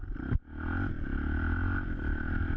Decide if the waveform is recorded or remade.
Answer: recorded